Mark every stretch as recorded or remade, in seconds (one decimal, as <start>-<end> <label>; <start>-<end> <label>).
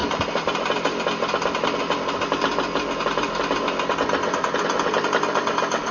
0.0-5.9 recorded